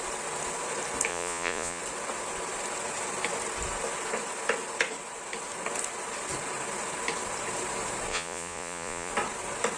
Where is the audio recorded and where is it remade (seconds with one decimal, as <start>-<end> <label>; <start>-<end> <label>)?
0.0-1.1 recorded; 1.1-1.8 remade; 1.8-8.1 recorded; 8.1-9.1 remade; 9.1-9.8 recorded